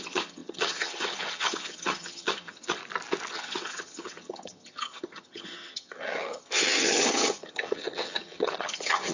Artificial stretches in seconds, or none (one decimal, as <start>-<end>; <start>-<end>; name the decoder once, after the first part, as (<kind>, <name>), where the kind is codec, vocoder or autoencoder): 0.0-2.8 (vocoder, HiFi-GAN); 3.3-9.1